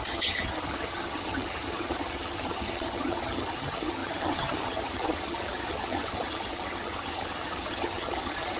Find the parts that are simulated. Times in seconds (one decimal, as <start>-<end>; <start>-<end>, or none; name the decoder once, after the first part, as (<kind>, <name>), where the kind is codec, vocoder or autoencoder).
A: 0.0-8.6 (vocoder, HiFi-GAN)